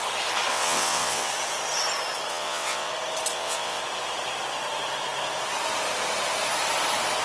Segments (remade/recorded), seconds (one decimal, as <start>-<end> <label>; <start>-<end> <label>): 0.0-0.5 recorded; 0.5-1.3 remade; 1.3-2.3 recorded; 2.3-2.9 remade; 2.9-3.3 recorded; 3.3-3.8 remade; 3.8-7.2 recorded